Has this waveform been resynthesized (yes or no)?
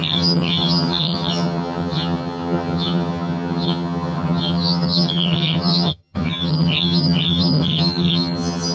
yes